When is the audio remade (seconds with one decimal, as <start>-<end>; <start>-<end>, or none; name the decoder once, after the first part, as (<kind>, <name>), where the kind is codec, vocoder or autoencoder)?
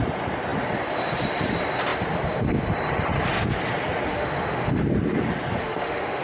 4.1-4.8 (autoencoder, DAC-VAE); 5.6-6.2